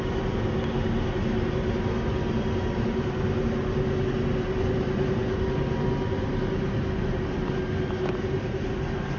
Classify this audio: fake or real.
real